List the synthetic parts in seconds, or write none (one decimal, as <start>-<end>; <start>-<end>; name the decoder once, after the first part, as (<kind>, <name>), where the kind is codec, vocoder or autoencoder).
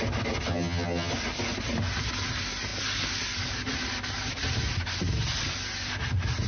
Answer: 0.5-1.1 (vocoder, HiFi-GAN)